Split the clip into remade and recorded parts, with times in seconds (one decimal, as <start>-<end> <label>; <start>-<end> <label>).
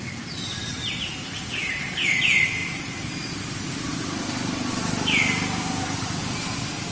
0.0-6.9 recorded